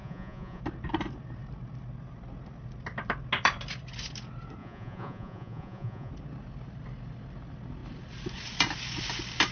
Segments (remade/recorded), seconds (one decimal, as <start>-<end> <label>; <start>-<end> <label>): 0.0-0.6 remade; 0.6-4.6 recorded; 4.6-6.1 remade; 6.1-9.5 recorded